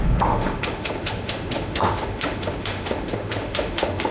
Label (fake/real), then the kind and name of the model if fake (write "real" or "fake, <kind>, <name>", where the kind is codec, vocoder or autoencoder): fake, autoencoder, DAC-VAE